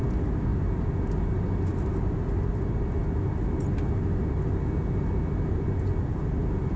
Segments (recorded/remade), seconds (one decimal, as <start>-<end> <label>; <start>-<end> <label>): 0.0-6.8 recorded